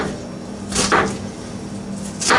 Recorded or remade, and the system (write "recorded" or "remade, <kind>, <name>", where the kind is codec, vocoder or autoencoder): recorded